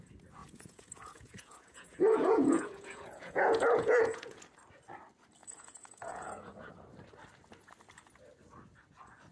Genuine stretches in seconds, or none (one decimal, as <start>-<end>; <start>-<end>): 0.0-0.4; 4.4-5.4; 6.7-9.3